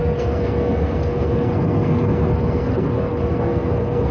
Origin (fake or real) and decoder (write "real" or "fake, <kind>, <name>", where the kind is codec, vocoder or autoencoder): fake, codec, SNAC